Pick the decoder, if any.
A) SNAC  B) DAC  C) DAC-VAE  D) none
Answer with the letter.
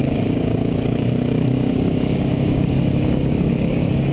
B